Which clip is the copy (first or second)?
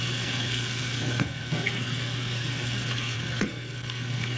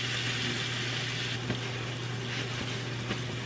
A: first